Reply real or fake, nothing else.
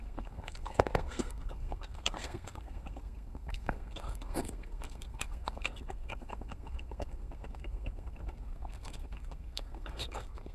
fake